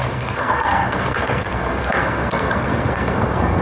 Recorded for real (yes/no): no